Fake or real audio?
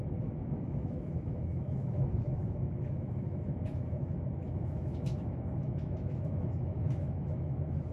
fake